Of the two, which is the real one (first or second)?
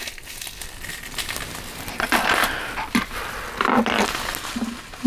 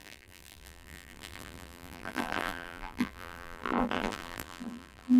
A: first